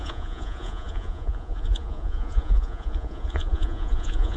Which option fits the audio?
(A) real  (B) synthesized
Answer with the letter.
B